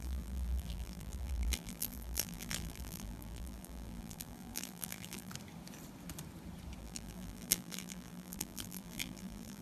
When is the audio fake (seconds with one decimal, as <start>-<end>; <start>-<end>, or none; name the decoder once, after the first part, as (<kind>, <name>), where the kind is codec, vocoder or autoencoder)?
0.0-5.3 (vocoder, BigVGAN v2); 6.8-9.6